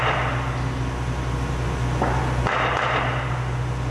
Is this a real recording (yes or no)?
yes